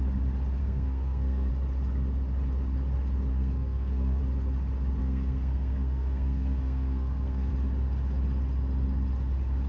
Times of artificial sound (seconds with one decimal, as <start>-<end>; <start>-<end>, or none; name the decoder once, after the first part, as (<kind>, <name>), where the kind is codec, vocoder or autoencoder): 0.6-1.5 (codec, SNAC); 3.3-4.2; 5.0-7.5

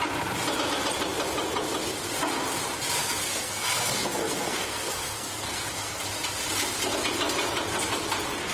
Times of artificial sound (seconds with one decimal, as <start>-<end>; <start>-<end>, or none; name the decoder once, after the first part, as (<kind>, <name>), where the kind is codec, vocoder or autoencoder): 3.0-6.0 (codec, SNAC)

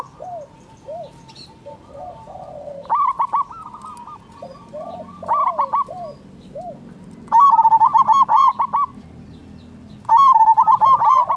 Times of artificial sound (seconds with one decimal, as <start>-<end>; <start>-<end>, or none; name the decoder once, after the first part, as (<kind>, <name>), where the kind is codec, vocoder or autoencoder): none